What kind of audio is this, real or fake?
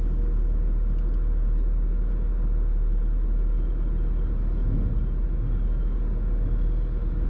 real